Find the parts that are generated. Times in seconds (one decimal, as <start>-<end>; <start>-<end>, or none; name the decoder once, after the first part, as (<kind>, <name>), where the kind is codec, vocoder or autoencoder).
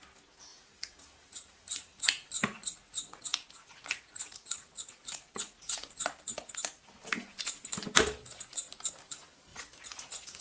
0.5-3.2 (vocoder, Vocos); 3.6-6.0; 9.5-10.4